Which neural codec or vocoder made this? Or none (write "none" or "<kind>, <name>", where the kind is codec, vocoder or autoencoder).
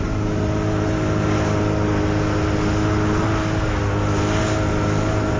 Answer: none